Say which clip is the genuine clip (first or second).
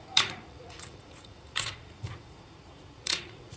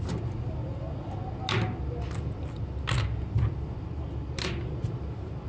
second